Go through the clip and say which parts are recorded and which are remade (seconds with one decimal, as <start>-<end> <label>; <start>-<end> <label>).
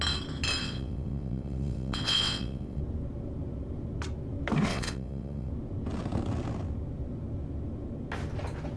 0.0-0.6 recorded; 0.6-2.8 remade; 2.8-4.7 recorded; 4.7-5.5 remade; 5.5-8.8 recorded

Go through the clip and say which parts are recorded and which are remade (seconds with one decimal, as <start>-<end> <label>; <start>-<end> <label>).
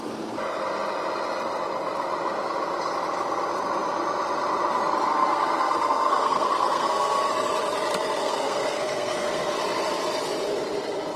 0.0-5.1 recorded; 5.1-7.3 remade; 7.3-8.2 recorded; 8.2-9.6 remade; 9.6-11.2 recorded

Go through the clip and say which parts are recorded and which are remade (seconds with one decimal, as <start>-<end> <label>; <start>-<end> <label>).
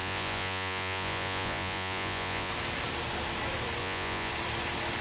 0.0-2.5 remade; 2.5-3.8 recorded; 3.8-4.3 remade; 4.3-5.0 recorded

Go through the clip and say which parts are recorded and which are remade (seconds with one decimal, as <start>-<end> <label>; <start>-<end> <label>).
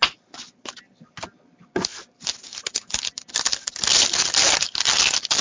0.0-5.4 recorded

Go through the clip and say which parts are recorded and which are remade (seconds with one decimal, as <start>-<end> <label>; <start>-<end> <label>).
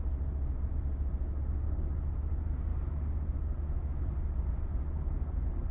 0.0-5.7 recorded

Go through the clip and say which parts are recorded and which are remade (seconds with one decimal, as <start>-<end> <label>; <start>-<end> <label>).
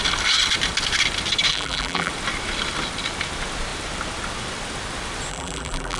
0.0-1.5 recorded; 1.5-2.1 remade; 2.1-5.3 recorded; 5.3-6.0 remade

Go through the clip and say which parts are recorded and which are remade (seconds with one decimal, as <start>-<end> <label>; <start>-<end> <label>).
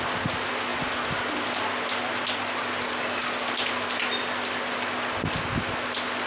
0.0-6.3 recorded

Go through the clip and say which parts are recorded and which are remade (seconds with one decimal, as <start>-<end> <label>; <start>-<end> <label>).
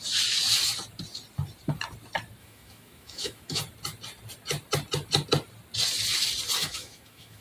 0.0-2.4 recorded; 2.4-3.6 remade; 3.6-6.6 recorded; 6.6-7.4 remade